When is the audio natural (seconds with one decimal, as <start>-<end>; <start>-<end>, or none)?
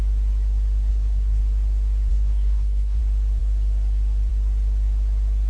0.0-0.9; 1.4-2.1; 3.0-5.5